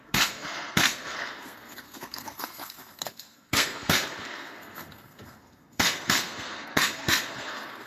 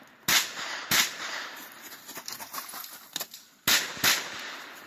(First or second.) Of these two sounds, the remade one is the first